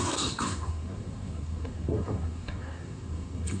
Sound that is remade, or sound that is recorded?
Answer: remade